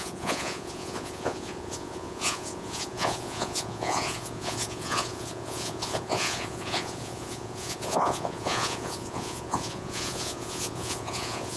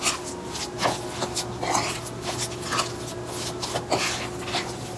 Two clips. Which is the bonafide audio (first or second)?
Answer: second